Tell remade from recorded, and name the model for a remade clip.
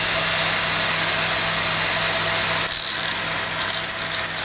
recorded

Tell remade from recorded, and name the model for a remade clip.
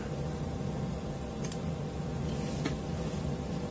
recorded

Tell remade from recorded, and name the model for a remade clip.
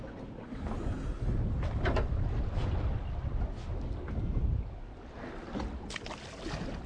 recorded